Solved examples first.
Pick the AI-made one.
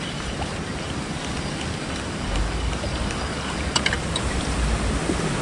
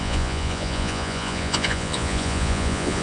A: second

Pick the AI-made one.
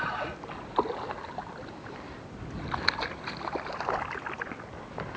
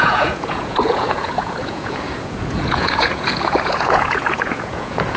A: second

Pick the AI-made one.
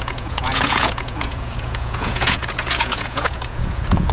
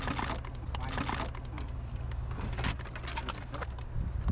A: first